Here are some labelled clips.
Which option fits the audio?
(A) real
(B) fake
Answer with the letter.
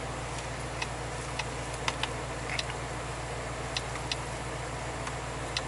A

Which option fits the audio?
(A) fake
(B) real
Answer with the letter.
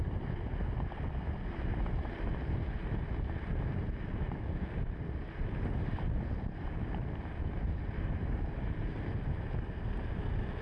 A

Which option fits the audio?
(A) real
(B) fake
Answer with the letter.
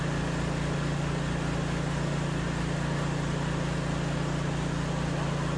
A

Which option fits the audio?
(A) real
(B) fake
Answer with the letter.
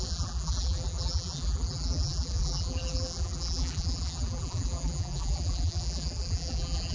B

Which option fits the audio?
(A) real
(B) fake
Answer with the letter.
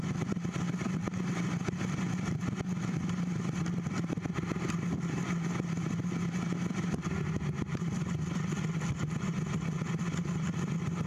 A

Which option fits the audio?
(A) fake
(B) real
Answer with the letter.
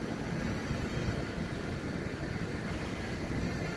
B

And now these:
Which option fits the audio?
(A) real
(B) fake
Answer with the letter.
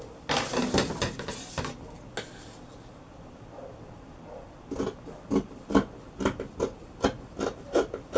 A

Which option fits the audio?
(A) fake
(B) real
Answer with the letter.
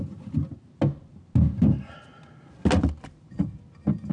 B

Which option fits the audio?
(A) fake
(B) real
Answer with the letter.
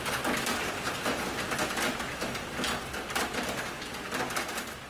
B